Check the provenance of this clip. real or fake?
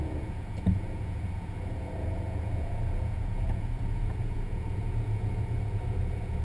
fake